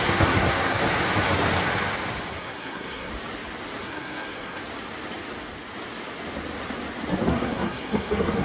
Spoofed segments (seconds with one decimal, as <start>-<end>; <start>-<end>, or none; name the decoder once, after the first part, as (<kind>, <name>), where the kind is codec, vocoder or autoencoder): 0.0-0.8 (codec, SNAC); 2.3-3.1; 3.8-4.6; 7.3-8.4